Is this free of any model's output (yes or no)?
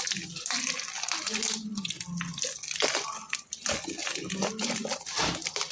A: yes